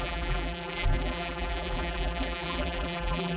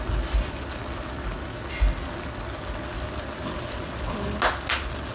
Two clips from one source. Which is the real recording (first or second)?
second